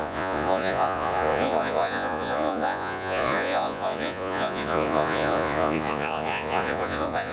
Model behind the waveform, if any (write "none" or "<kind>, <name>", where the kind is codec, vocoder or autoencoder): vocoder, Vocos